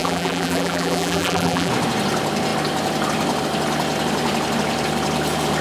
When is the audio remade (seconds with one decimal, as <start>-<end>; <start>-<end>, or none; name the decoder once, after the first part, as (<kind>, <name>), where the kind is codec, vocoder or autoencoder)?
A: 0.0-1.7 (vocoder, BigVGAN v2)